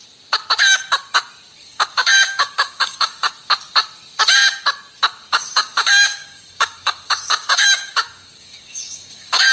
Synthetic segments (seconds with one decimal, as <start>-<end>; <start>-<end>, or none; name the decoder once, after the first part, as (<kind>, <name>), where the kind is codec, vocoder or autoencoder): 1.6-3.3 (codec, DAC); 5.2-9.5